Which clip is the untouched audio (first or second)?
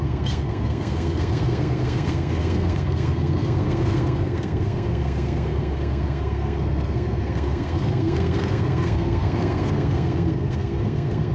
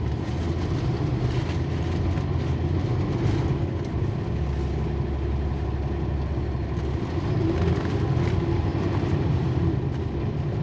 second